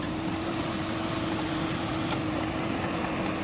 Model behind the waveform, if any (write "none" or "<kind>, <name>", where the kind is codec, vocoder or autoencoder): none